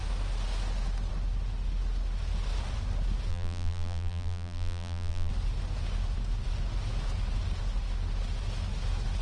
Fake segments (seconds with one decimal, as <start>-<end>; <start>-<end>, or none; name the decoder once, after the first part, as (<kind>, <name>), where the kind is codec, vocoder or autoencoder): 3.3-5.3 (vocoder, BigVGAN v2)